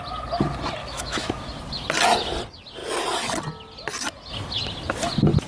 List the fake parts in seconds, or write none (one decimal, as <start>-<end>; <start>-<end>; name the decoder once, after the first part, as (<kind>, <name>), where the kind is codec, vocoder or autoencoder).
0.8-1.4 (autoencoder, DAC-VAE)